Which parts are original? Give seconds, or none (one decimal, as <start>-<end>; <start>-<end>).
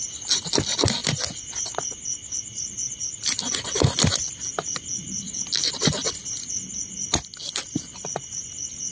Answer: 0.0-8.9